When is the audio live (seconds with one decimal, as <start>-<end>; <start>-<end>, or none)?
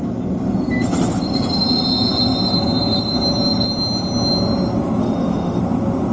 0.0-5.0; 5.6-6.1